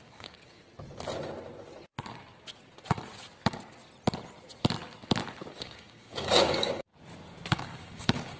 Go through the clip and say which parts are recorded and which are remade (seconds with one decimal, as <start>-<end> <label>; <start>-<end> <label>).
0.0-0.6 remade; 0.6-5.5 recorded; 5.5-6.9 remade; 6.9-7.5 recorded; 7.5-8.4 remade